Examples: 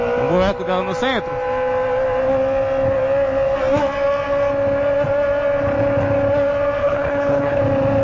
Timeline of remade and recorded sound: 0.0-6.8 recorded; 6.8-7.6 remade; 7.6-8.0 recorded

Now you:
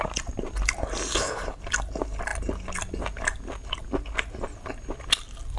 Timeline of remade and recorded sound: 0.0-1.1 recorded; 1.1-1.6 remade; 1.6-5.6 recorded

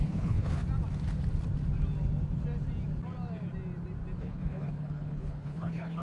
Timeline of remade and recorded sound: 0.0-0.6 remade; 0.6-4.2 recorded; 4.2-6.0 remade